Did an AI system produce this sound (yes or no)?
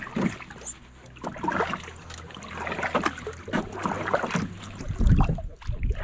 no